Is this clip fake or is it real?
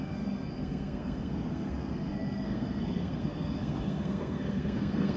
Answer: fake